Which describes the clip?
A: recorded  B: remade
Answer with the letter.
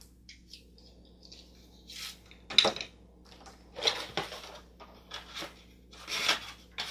A